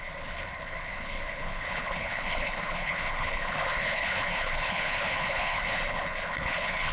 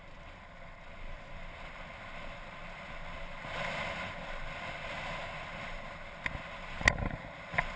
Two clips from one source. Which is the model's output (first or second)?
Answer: first